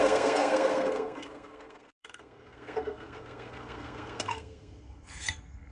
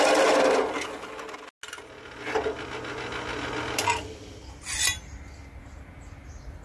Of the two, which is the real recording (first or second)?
second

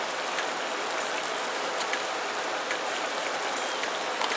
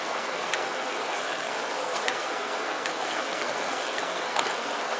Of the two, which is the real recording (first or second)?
first